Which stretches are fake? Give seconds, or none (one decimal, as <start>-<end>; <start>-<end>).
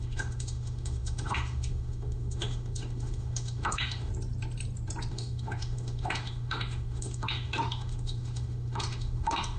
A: 0.0-4.1; 5.1-9.6